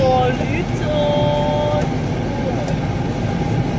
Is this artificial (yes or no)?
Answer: no